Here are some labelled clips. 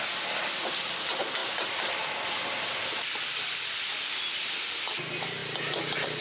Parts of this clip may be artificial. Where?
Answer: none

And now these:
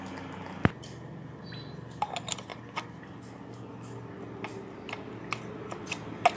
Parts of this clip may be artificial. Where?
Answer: none

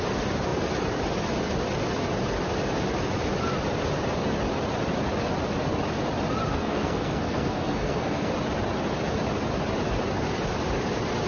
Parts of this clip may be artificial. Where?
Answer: 6.5-8.3

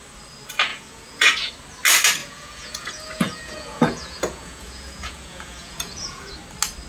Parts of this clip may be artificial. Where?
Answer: 0.7-1.5; 2.2-6.3

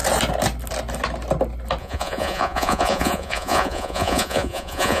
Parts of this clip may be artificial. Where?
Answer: 1.8-5.0

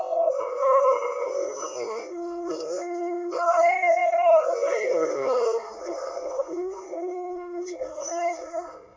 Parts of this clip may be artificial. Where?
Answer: 0.0-9.0